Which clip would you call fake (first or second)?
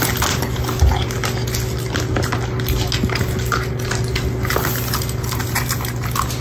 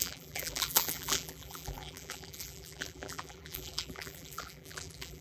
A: second